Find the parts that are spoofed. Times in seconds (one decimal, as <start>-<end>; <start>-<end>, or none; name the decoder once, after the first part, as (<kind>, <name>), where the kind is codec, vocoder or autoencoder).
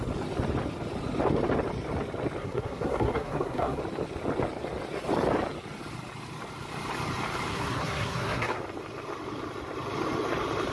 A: 2.4-3.8 (codec, SNAC); 7.5-8.6